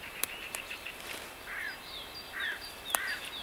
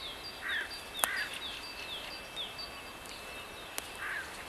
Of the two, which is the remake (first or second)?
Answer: first